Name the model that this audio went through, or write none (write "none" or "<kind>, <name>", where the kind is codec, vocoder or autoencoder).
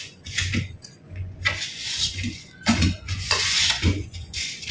vocoder, Vocos